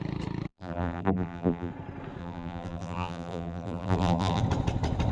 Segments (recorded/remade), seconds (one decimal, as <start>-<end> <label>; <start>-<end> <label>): 0.0-0.5 recorded; 0.5-1.7 remade; 1.7-2.2 recorded; 2.2-4.4 remade; 4.4-5.1 recorded